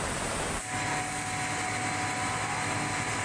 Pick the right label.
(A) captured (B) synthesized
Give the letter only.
A